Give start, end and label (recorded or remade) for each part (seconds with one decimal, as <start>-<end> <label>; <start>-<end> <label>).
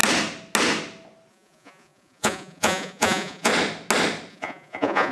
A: 0.0-1.3 recorded; 1.3-3.5 remade; 3.5-4.3 recorded; 4.3-5.1 remade